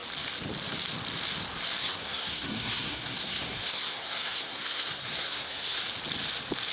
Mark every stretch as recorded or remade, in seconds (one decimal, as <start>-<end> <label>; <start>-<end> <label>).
0.0-1.8 recorded; 1.8-5.8 remade; 5.8-6.7 recorded